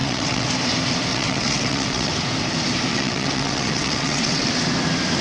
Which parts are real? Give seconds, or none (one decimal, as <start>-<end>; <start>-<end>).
0.5-1.1; 2.1-2.9; 4.5-5.2